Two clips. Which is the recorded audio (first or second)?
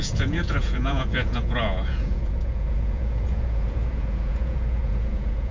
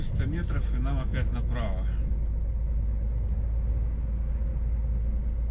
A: second